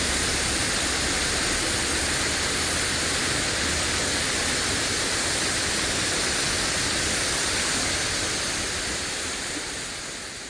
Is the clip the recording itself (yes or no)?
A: yes